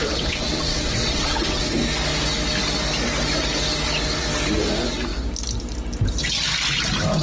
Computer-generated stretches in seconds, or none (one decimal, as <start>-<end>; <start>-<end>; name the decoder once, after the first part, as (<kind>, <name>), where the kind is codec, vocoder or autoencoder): 0.0-1.6 (vocoder, WaveNeXt)